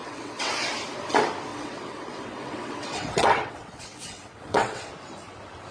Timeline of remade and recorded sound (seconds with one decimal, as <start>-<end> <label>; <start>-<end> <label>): 0.0-0.5 remade; 0.5-1.5 recorded; 1.5-4.9 remade; 4.9-5.7 recorded